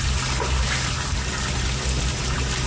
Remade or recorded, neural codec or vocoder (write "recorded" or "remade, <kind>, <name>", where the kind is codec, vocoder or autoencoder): recorded